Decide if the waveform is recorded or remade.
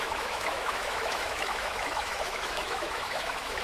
remade